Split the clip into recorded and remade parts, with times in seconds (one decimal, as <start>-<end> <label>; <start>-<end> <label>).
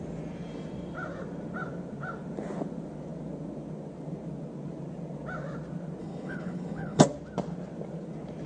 0.0-6.0 recorded; 6.0-7.0 remade; 7.0-8.5 recorded